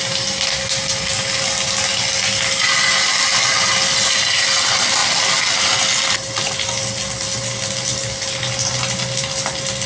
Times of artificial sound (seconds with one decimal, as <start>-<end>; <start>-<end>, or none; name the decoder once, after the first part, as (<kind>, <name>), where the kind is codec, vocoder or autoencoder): none